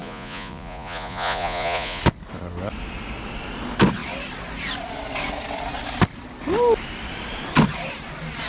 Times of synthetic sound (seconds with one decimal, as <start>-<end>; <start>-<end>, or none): 0.0-2.0